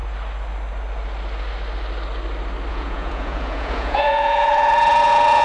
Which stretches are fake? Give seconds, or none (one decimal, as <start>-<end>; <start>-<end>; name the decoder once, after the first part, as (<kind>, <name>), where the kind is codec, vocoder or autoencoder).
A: 2.7-5.4 (vocoder, Vocos)